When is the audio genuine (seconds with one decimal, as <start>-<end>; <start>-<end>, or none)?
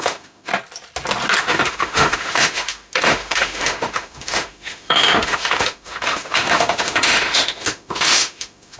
0.5-1.4